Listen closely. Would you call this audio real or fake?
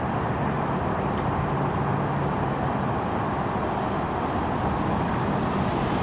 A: real